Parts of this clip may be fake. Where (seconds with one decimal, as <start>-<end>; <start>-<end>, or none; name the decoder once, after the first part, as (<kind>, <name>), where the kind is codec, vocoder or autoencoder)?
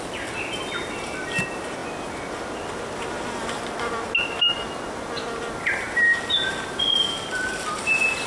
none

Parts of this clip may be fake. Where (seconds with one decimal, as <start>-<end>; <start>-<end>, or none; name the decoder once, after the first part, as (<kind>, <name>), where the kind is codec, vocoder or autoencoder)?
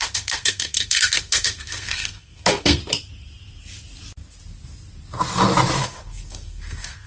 0.0-2.8 (codec, SNAC); 5.8-7.1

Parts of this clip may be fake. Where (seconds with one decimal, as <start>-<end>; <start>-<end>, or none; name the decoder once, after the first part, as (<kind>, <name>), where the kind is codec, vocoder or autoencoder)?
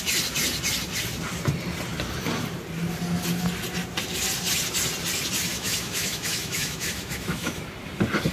5.5-7.6 (autoencoder, DAC-VAE)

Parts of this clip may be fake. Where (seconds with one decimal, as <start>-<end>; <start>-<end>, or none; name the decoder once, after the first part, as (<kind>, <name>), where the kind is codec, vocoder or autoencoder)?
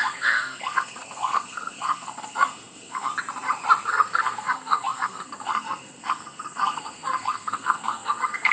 0.0-3.1 (codec, SNAC); 3.9-8.5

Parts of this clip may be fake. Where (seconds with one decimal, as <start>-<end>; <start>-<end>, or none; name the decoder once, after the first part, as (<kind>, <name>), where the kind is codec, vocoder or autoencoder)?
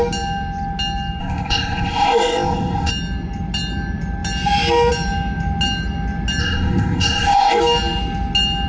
1.2-2.9 (codec, ZipCodec); 6.4-7.6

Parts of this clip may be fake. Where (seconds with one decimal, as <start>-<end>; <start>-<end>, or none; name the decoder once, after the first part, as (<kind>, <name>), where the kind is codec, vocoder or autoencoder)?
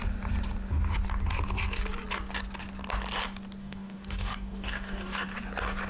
3.6-5.3 (codec, DAC)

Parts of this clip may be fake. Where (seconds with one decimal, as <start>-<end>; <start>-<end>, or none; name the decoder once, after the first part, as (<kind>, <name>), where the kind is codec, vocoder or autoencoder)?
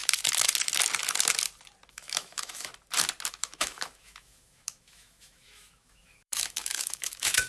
1.9-2.7 (autoencoder, DAC-VAE); 3.3-7.5